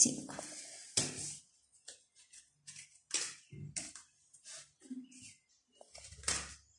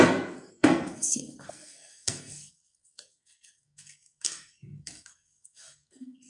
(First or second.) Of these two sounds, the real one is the first